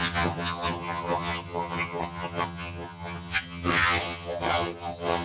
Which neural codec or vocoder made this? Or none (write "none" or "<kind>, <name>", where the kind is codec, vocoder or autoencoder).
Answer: vocoder, HiFi-GAN